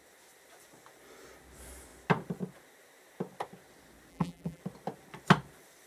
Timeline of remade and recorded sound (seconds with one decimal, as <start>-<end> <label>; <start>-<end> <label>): 0.0-4.1 recorded; 4.1-4.6 remade; 4.6-5.9 recorded